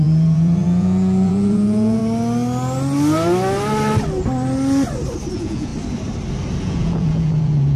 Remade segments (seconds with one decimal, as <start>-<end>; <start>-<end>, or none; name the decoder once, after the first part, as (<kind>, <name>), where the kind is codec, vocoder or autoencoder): 0.0-2.0 (vocoder, Vocos); 5.3-5.7; 6.6-7.8